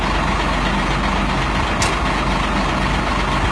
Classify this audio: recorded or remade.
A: recorded